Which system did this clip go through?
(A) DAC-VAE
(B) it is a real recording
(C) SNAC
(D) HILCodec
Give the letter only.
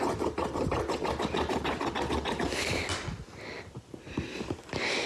B